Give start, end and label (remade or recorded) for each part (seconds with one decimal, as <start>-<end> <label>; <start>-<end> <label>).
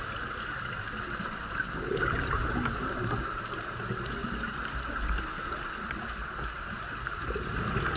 0.0-8.0 recorded